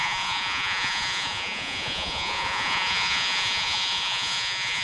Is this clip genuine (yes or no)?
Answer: no